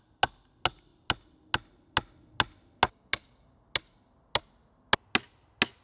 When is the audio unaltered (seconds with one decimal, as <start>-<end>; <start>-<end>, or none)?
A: 0.0-5.8